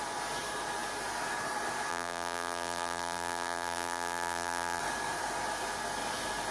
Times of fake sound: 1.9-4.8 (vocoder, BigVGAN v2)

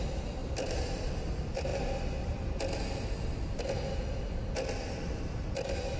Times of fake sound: 0.4-1.1 (vocoder, BigVGAN v2); 1.7-3.6

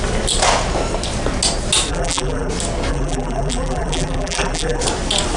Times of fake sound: 1.9-2.5 (vocoder, BigVGAN v2); 2.9-4.8